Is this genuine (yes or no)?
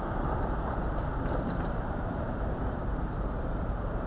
no